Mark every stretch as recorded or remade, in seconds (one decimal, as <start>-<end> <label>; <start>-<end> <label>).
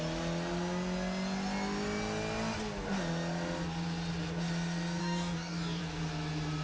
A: 0.0-5.0 recorded; 5.0-5.8 remade; 5.8-6.6 recorded